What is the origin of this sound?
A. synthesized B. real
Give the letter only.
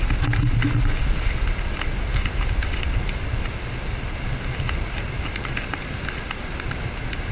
B